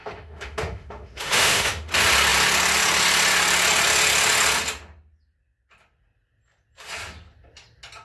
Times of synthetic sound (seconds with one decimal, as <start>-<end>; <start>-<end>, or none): 0.0-1.9